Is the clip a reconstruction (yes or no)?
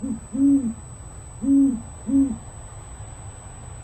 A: no